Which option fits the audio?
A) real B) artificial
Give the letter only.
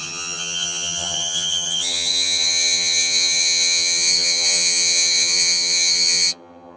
B